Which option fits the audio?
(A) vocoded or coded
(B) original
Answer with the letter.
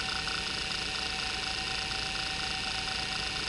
B